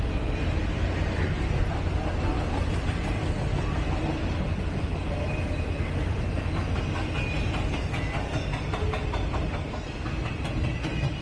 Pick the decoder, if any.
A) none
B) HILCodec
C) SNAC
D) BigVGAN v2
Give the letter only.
A